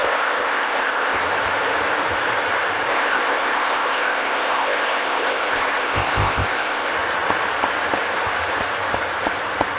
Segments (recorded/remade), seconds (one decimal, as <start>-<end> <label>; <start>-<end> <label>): 0.0-1.2 remade; 1.2-2.9 recorded; 2.9-6.9 remade; 6.9-9.8 recorded